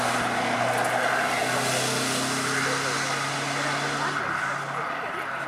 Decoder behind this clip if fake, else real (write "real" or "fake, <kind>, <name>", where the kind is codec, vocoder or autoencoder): real